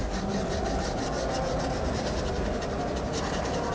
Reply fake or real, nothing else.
real